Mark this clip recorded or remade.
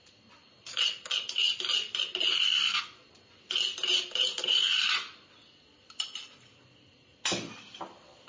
recorded